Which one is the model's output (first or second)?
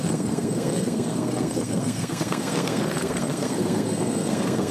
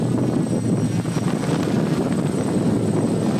first